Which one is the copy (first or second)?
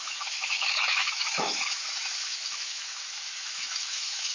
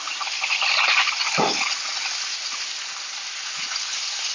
first